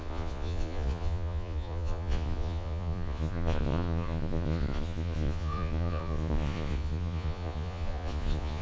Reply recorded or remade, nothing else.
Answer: remade